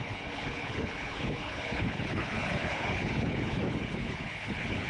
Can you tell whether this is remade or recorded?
remade